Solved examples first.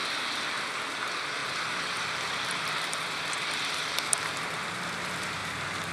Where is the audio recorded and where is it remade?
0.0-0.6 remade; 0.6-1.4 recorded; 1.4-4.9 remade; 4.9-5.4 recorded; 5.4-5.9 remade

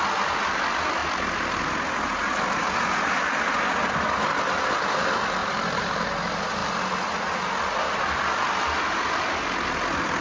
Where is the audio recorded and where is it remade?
0.0-5.4 recorded; 5.4-6.0 remade; 6.0-10.2 recorded